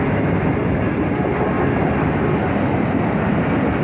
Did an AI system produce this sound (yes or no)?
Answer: no